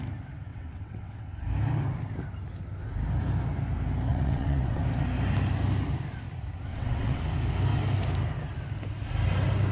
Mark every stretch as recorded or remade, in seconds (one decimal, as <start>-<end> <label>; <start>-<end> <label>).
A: 0.0-0.5 recorded; 0.5-1.2 remade; 1.2-4.1 recorded; 4.1-4.8 remade; 4.8-6.7 recorded; 6.7-7.2 remade; 7.2-9.7 recorded